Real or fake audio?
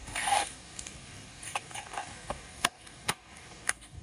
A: fake